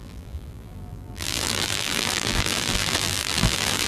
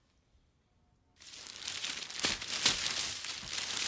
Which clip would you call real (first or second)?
second